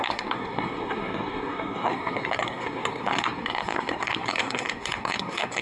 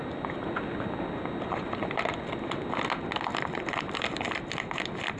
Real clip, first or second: second